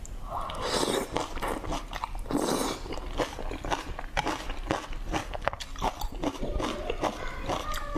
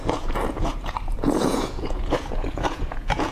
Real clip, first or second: first